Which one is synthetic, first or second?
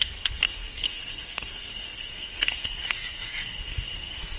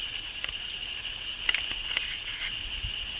first